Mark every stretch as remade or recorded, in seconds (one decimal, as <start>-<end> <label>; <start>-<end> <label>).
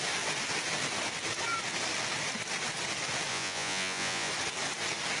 0.0-3.3 recorded; 3.3-4.3 remade; 4.3-5.2 recorded